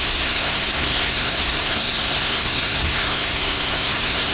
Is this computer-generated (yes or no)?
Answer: yes